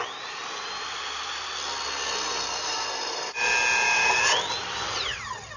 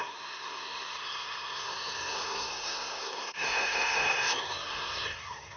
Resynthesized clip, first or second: second